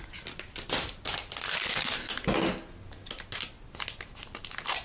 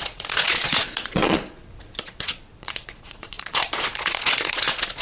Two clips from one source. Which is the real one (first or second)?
first